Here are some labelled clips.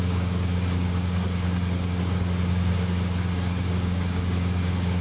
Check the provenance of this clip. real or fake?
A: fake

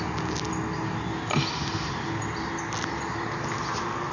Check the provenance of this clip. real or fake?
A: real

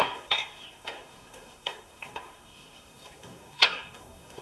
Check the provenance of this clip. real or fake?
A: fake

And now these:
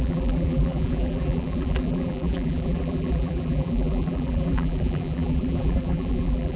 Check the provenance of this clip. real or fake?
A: fake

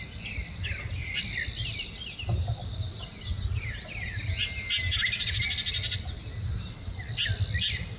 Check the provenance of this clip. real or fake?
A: real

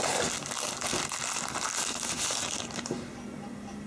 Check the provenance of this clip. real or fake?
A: real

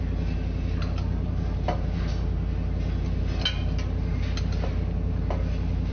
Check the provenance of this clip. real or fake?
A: real